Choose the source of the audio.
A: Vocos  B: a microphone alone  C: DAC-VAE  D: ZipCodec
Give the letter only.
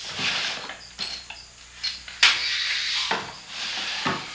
B